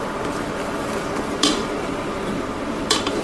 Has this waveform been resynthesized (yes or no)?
yes